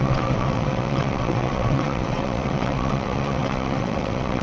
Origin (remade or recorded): remade